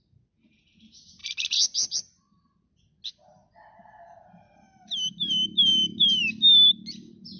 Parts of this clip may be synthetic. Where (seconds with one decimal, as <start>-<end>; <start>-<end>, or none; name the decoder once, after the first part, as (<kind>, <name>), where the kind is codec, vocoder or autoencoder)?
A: 1.2-2.2 (vocoder, BigVGAN v2); 5.7-6.2